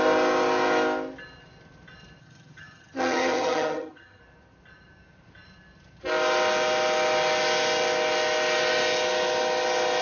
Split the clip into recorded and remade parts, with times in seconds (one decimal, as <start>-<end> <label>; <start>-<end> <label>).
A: 0.0-2.2 recorded; 2.2-4.2 remade; 4.2-10.0 recorded